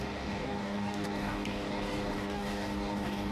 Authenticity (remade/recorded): remade